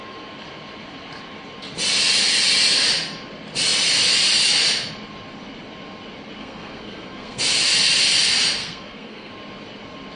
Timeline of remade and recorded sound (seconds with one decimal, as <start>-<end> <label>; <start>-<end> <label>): 0.0-6.4 recorded; 6.4-7.4 remade; 7.4-8.6 recorded; 8.6-9.3 remade; 9.3-10.2 recorded